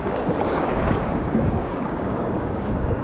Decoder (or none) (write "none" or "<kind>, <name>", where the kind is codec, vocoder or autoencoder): codec, DAC